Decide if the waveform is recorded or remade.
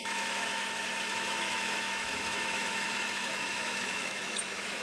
remade